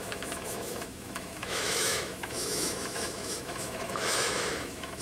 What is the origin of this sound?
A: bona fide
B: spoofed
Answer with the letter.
B